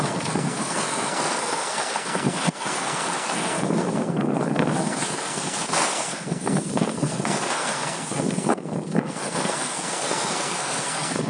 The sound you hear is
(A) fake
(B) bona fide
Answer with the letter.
A